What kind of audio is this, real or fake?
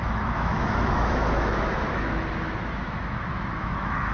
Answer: fake